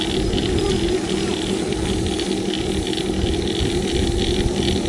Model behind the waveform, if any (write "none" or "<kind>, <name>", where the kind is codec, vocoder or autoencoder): none